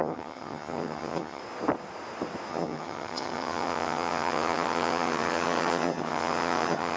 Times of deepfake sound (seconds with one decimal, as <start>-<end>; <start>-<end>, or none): 0.0-1.4; 2.5-7.0